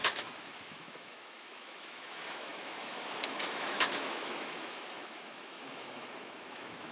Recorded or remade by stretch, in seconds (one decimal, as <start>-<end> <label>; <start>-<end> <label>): 0.0-6.9 remade